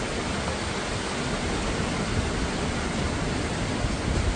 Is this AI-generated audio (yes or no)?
no